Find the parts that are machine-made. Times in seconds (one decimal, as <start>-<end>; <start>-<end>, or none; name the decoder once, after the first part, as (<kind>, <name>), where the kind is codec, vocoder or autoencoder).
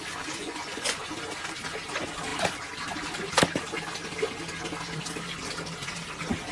0.4-1.0 (vocoder, Vocos)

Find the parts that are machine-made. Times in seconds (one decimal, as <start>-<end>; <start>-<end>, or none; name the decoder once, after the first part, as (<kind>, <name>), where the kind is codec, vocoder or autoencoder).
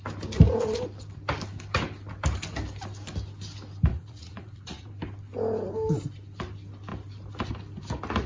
3.9-4.9 (vocoder, Vocos)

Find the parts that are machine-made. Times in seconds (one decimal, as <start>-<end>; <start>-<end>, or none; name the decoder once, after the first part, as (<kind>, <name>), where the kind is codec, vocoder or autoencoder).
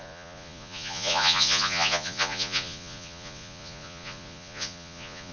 0.0-5.3 (vocoder, Vocos)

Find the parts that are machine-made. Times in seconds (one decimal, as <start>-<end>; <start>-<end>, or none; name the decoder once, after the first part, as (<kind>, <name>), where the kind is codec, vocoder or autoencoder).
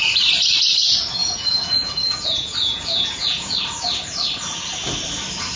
1.2-3.5 (vocoder, Vocos)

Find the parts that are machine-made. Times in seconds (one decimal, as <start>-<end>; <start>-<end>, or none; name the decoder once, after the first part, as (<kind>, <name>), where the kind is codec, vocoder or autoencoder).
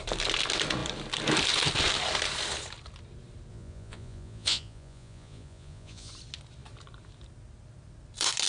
3.5-6.1 (vocoder, Vocos)